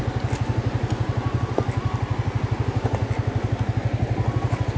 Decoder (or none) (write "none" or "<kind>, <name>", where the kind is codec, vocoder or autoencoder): none